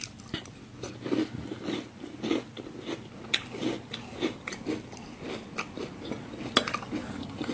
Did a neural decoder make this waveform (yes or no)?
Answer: no